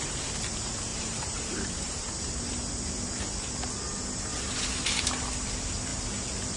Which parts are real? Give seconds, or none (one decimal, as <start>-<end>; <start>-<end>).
0.0-0.9; 2.5-6.6

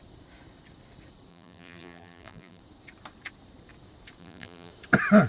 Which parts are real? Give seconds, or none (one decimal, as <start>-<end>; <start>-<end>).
0.0-1.3; 2.6-4.2; 4.7-5.3

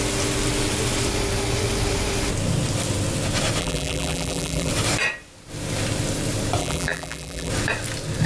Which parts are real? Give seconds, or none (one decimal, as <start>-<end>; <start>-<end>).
0.0-3.6; 4.7-6.6; 7.5-8.3